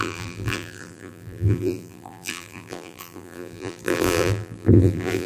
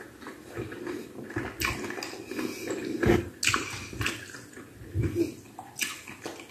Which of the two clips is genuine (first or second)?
second